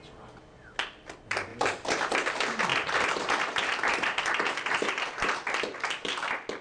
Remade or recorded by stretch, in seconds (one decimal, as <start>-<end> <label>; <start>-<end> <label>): 0.0-1.5 recorded; 1.5-2.1 remade; 2.1-2.7 recorded; 2.7-5.4 remade; 5.4-6.6 recorded

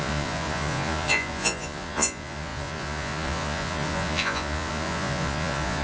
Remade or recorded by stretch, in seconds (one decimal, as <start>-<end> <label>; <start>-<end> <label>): 0.0-5.8 remade

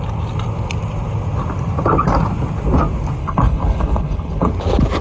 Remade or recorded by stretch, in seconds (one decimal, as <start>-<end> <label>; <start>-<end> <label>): 0.0-3.2 recorded; 3.2-4.5 remade; 4.5-5.0 recorded

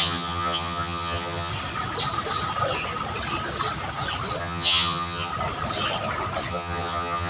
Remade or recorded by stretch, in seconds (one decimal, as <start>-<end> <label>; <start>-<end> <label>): 0.0-1.5 remade; 1.5-4.4 recorded; 4.4-5.3 remade; 5.3-6.5 recorded; 6.5-7.3 remade

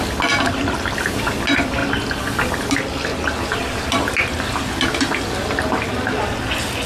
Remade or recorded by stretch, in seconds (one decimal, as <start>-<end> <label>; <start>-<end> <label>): 0.0-6.9 recorded

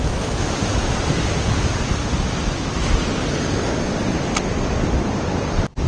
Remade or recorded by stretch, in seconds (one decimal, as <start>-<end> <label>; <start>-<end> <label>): 0.0-0.6 remade; 0.6-5.9 recorded

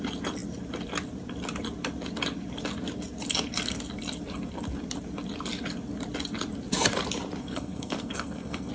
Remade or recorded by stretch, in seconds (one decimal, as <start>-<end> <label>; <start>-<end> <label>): 0.0-7.4 recorded; 7.4-8.7 remade

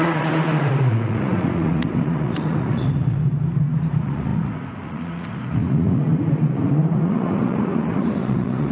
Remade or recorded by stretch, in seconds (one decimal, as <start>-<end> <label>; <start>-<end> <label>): 0.0-8.7 remade